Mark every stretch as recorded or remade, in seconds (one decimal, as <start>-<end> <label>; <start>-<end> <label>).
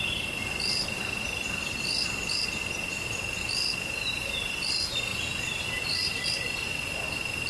0.0-7.5 recorded